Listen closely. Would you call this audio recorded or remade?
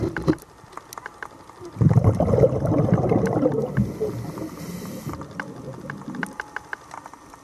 remade